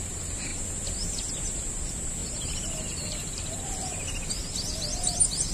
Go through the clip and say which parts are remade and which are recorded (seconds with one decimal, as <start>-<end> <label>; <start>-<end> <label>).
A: 0.0-0.5 remade; 0.5-1.7 recorded; 1.7-2.2 remade; 2.2-5.5 recorded